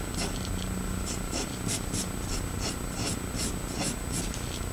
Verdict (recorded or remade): recorded